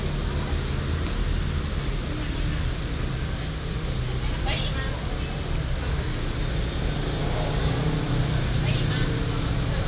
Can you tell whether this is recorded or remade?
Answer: recorded